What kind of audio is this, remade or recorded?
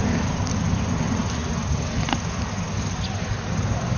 recorded